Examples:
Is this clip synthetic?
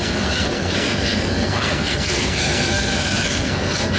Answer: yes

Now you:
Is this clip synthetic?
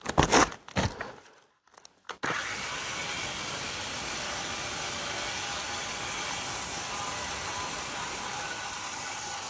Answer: no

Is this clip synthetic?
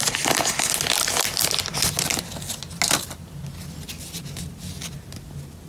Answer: no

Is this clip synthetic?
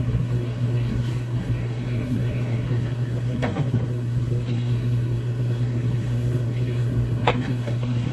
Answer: yes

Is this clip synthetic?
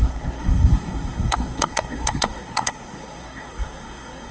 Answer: yes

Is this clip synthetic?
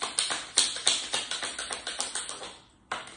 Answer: no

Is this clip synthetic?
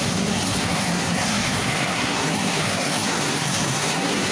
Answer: yes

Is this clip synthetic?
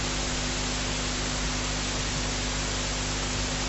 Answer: no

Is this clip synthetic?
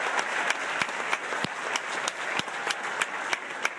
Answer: no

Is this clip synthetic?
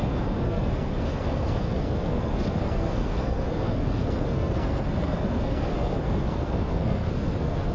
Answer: yes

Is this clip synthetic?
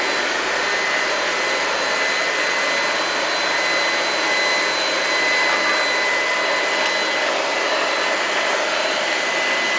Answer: no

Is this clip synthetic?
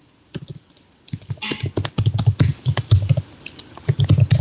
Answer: no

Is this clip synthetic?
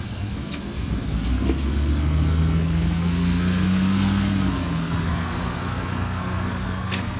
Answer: yes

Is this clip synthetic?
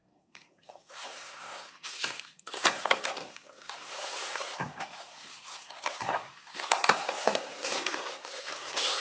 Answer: yes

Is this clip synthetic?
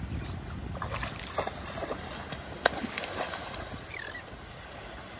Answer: no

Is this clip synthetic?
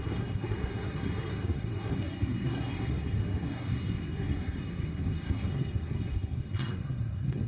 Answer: yes